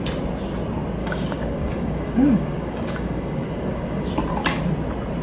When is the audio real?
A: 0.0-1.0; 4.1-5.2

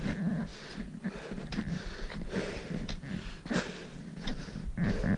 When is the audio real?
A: 0.0-0.5; 3.6-5.2

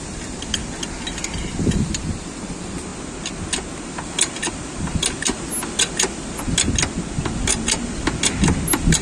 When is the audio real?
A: 0.0-9.0

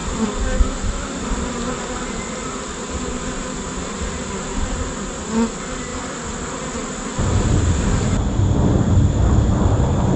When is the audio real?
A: 0.0-10.2